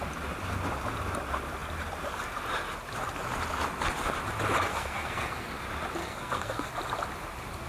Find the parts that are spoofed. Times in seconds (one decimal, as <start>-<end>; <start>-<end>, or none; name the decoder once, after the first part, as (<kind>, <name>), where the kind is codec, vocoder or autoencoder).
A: 4.7-5.6 (codec, SNAC); 6.0-6.7